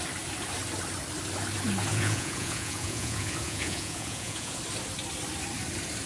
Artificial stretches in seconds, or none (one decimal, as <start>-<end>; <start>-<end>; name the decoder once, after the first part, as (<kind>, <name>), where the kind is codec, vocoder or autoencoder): 1.9-4.6 (vocoder, Vocos)